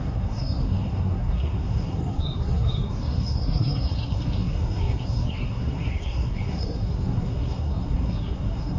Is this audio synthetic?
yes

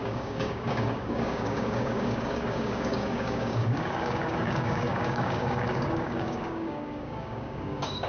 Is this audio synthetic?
yes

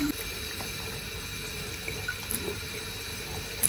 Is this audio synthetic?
no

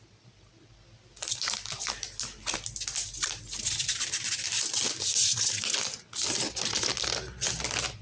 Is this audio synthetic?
no